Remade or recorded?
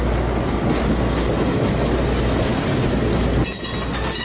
recorded